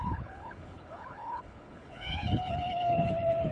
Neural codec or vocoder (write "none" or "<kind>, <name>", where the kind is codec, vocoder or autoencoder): codec, HILCodec